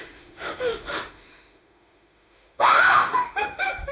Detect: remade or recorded remade